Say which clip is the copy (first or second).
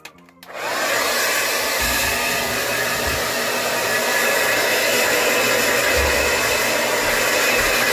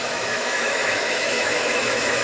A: second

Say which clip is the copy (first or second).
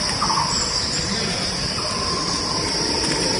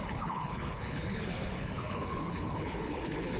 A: second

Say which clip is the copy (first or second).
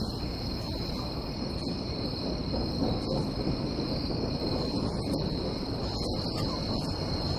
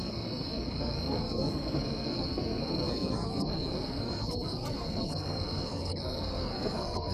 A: second